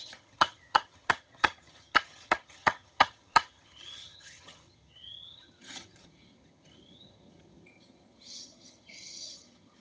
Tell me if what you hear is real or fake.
fake